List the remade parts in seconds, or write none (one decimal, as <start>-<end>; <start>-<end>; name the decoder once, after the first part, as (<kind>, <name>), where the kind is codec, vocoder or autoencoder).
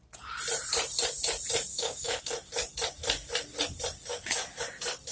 1.7-2.2 (autoencoder, DAC-VAE); 4.1-4.6